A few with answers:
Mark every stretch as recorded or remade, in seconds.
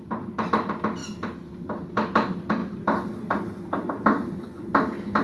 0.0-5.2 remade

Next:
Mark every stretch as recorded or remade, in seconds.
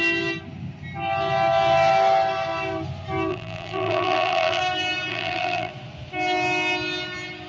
0.0-3.3 recorded; 3.3-4.6 remade; 4.6-5.1 recorded; 5.1-5.7 remade; 5.7-7.5 recorded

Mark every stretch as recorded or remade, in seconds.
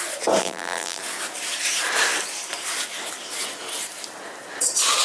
0.0-0.4 recorded; 0.4-1.0 remade; 1.0-5.0 recorded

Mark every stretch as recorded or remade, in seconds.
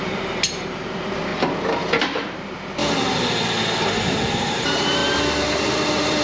0.0-1.3 remade; 1.3-2.0 recorded; 2.0-2.8 remade; 2.8-4.4 recorded; 4.4-5.0 remade; 5.0-5.6 recorded; 5.6-6.2 remade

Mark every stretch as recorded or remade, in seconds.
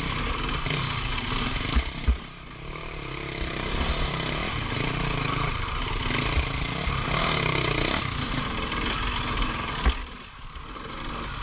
0.0-1.1 recorded; 1.1-5.9 remade; 5.9-10.0 recorded; 10.0-11.0 remade; 11.0-11.4 recorded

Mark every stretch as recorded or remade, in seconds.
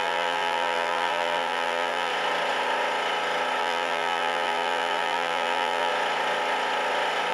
0.0-2.1 remade; 2.1-3.6 recorded; 3.6-5.9 remade; 5.9-7.3 recorded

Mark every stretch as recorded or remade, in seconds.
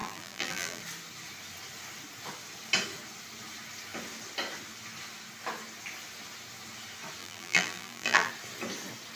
0.0-0.8 remade; 0.8-7.2 recorded; 7.2-8.3 remade; 8.3-9.2 recorded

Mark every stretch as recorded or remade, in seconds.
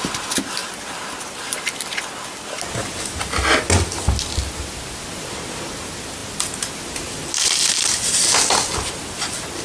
0.0-9.6 recorded